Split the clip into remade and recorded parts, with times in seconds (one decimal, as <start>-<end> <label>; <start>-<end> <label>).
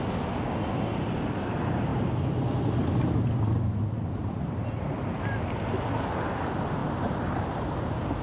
0.0-4.2 recorded; 4.2-5.6 remade; 5.6-6.8 recorded; 6.8-7.6 remade; 7.6-8.2 recorded